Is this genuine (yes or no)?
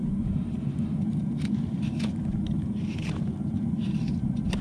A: no